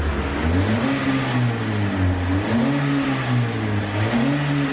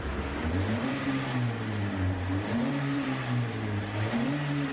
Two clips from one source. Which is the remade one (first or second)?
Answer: second